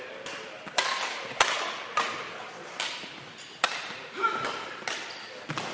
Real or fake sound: real